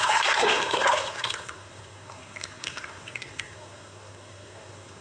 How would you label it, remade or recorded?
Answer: remade